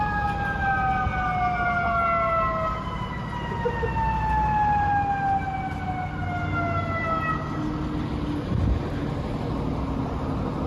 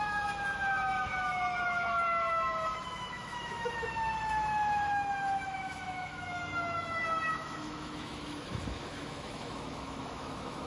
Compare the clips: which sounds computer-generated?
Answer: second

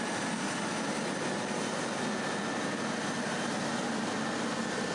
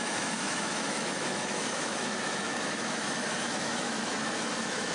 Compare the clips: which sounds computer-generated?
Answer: second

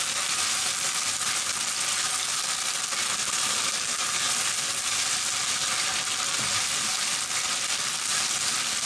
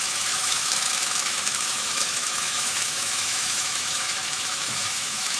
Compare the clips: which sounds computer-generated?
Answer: second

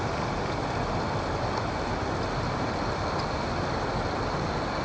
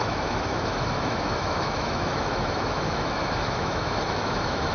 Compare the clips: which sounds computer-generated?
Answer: second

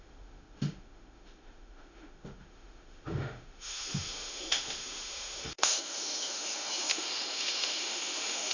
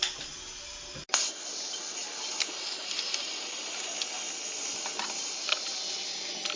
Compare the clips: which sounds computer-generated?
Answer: first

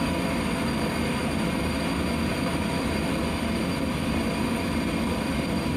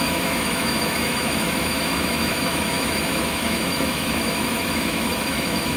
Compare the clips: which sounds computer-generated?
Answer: second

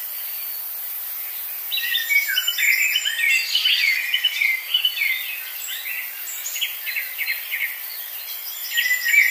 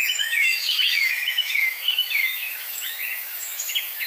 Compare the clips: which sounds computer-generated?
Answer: second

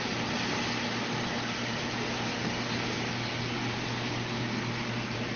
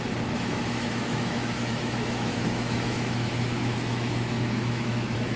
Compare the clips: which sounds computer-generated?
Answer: second